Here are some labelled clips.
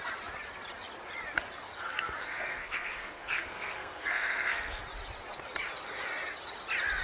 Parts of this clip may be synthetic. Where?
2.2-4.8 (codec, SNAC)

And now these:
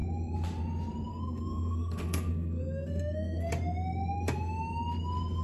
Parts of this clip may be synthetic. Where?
1.1-3.5 (codec, SNAC)

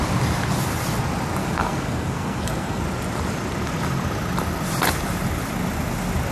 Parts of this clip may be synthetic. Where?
1.4-2.8 (codec, SNAC)